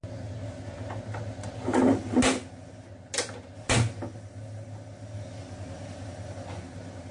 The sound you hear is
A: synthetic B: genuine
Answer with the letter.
B